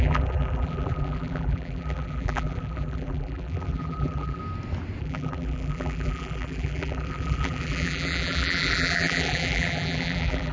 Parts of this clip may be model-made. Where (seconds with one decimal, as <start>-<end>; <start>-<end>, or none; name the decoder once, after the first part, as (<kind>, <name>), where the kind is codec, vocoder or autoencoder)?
0.0-4.4 (vocoder, BigVGAN v2); 5.0-10.5